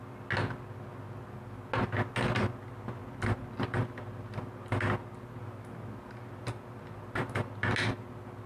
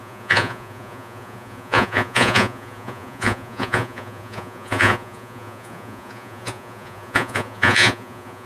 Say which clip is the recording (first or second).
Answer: first